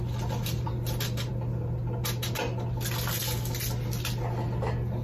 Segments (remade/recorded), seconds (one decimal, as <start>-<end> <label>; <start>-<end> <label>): 0.0-5.0 recorded